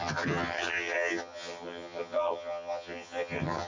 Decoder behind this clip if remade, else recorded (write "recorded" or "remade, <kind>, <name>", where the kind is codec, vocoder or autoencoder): remade, vocoder, HiFi-GAN